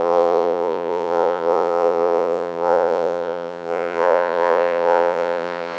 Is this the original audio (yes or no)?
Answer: no